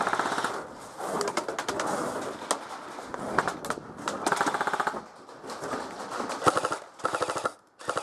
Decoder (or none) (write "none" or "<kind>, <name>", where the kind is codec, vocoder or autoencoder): none